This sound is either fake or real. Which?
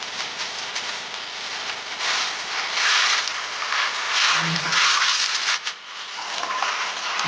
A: real